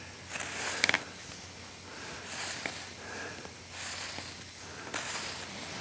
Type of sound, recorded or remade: recorded